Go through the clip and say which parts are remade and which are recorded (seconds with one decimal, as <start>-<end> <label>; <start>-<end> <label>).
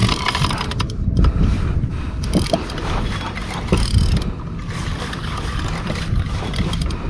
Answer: 0.0-1.9 remade; 1.9-7.1 recorded